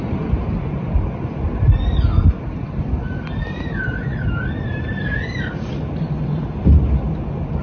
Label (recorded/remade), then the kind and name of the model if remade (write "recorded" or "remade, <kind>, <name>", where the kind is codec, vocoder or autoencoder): remade, vocoder, BigVGAN v2